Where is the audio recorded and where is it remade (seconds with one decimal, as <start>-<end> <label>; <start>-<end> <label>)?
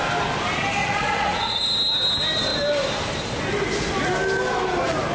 0.0-0.8 recorded; 0.8-1.6 remade; 1.6-5.1 recorded